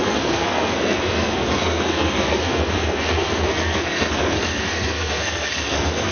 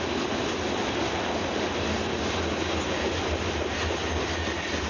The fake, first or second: first